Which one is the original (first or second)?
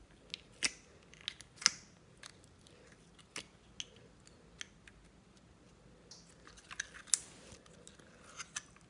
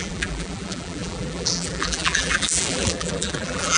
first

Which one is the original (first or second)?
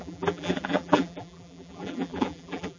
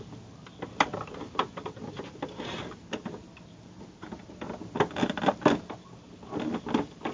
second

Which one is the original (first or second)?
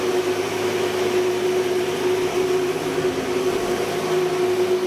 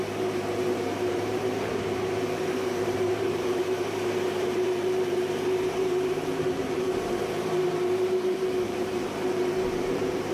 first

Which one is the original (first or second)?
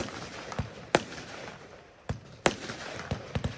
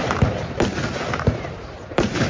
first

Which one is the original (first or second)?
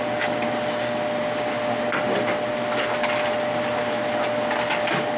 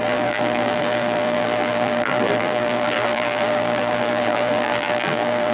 first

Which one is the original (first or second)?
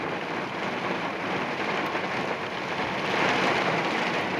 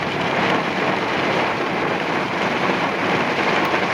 first